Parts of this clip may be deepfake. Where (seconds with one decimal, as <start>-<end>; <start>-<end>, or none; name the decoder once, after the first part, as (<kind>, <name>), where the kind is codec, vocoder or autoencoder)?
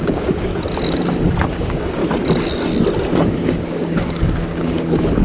0.0-0.5 (codec, DAC); 1.4-2.0; 3.2-5.2